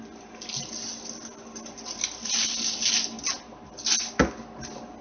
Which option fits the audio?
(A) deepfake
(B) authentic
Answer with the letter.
B